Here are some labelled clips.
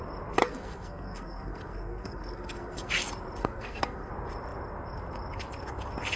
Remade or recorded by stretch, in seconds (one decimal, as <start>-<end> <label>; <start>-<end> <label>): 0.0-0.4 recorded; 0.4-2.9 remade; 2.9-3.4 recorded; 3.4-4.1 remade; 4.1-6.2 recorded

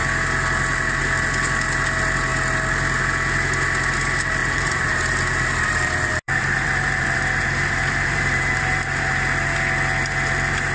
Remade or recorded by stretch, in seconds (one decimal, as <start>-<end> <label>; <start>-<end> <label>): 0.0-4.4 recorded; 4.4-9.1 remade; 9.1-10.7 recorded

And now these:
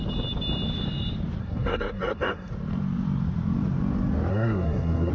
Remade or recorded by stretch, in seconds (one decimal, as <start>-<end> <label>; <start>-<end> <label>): 0.0-1.4 recorded; 1.4-2.5 remade; 2.5-4.3 recorded; 4.3-5.1 remade

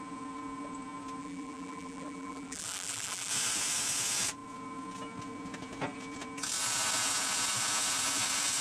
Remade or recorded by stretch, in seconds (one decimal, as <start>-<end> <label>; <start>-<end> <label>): 0.0-1.2 recorded; 1.2-3.3 remade; 3.3-8.6 recorded